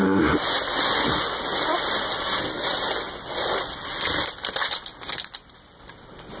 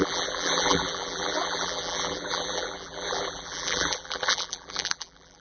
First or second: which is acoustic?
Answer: first